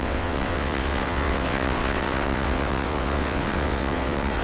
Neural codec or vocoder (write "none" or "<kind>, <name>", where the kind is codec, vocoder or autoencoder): vocoder, WaveNeXt